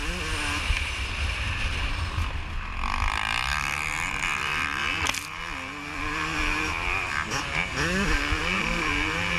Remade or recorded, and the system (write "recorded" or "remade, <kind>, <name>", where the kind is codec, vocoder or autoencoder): recorded